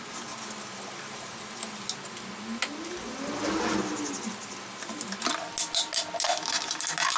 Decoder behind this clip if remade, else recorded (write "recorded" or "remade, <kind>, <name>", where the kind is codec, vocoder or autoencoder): recorded